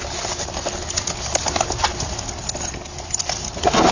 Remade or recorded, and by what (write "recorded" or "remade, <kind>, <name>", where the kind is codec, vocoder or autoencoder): recorded